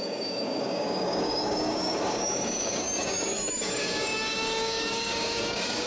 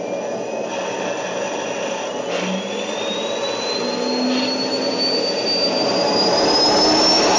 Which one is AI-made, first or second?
first